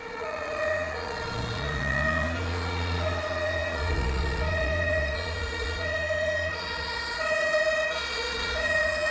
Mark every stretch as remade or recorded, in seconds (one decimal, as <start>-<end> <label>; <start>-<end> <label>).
0.0-9.1 remade